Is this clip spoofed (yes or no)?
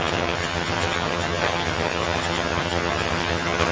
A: yes